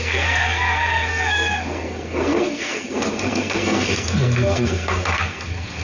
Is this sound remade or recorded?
remade